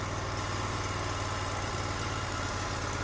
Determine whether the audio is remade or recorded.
recorded